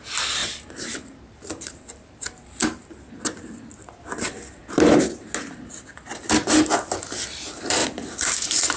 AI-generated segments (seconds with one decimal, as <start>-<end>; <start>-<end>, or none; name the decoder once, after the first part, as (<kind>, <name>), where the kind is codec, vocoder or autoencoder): 0.4-3.1 (vocoder, BigVGAN v2); 7.8-8.8